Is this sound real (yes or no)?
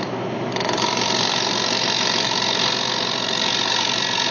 yes